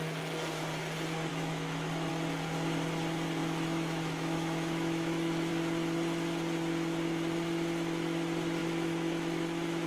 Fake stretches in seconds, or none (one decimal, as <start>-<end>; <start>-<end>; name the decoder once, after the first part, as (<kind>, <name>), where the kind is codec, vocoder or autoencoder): 1.3-2.1 (autoencoder, DAC-VAE); 3.4-5.5; 8.6-9.9